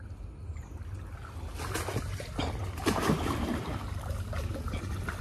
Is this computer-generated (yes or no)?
no